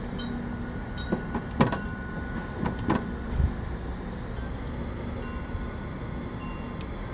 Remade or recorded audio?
recorded